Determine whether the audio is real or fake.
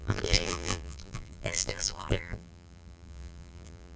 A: fake